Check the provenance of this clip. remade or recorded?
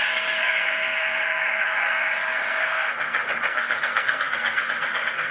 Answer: remade